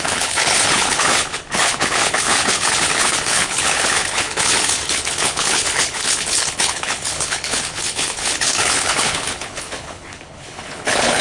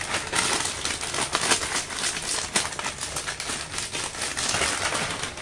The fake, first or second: first